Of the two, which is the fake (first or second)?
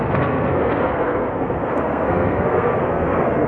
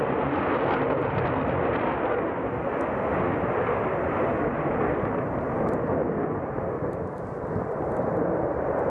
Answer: first